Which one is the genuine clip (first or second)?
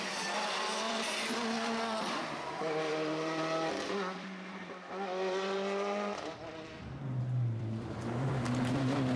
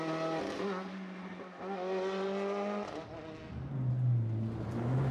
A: second